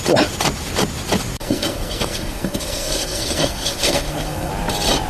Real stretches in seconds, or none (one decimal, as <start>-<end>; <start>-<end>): 0.0-1.4; 4.5-5.1